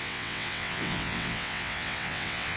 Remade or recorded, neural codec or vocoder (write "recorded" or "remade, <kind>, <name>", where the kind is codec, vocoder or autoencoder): remade, vocoder, WaveNeXt